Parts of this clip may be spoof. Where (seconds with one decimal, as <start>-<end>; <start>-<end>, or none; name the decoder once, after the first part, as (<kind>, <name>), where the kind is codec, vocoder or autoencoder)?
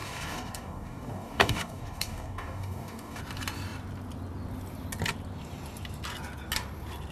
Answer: 0.0-3.2 (codec, DAC)